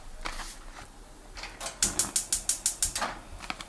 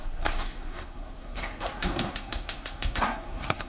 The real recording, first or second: first